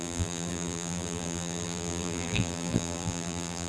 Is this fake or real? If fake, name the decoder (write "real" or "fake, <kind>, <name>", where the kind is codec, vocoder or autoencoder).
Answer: fake, vocoder, BigVGAN v2